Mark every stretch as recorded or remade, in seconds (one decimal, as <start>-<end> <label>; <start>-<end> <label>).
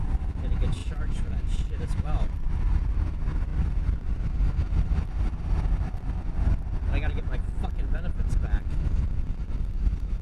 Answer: 0.0-0.8 recorded; 0.8-2.5 remade; 2.5-10.2 recorded